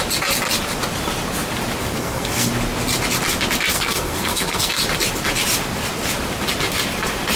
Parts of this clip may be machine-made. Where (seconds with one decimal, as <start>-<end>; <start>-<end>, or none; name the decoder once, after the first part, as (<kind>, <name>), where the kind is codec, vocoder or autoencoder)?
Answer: 1.8-2.5 (codec, SNAC); 3.7-4.7